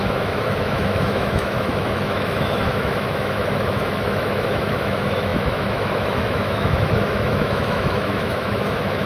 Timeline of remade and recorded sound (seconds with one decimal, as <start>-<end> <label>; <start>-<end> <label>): 0.0-9.1 remade